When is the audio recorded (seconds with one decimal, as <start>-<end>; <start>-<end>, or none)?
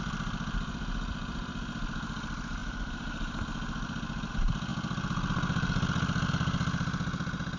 0.0-7.6